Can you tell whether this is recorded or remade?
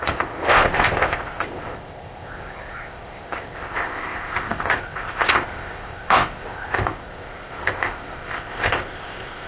remade